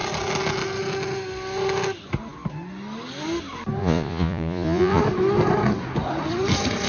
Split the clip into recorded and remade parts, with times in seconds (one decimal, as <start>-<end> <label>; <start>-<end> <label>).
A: 0.0-3.8 recorded; 3.8-5.0 remade; 5.0-6.9 recorded